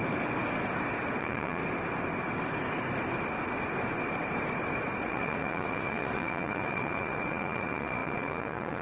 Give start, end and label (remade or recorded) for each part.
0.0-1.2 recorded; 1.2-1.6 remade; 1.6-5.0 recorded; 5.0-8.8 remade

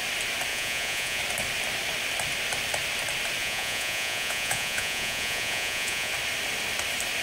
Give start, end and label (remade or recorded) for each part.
0.0-0.5 recorded; 0.5-1.2 remade; 1.2-3.4 recorded; 3.4-6.1 remade; 6.1-7.2 recorded

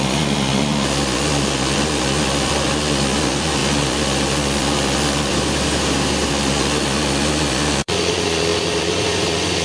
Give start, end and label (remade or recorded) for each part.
0.0-5.3 remade; 5.3-6.3 recorded; 6.3-9.6 remade